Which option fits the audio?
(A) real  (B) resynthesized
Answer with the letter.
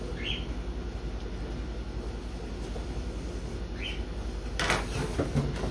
A